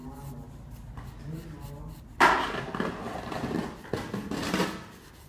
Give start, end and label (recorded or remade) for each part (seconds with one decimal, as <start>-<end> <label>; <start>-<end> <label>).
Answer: 0.0-5.3 recorded